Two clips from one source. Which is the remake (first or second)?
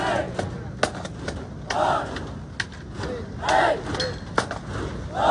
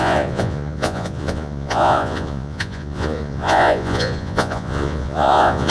second